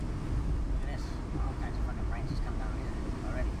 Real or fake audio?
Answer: real